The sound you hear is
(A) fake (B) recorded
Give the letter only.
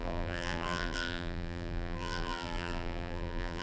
A